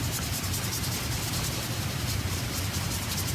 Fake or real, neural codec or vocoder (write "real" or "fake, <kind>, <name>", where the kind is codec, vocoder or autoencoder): fake, vocoder, BigVGAN v2